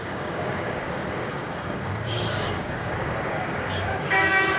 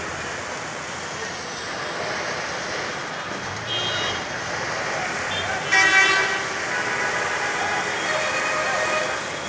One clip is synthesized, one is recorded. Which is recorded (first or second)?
second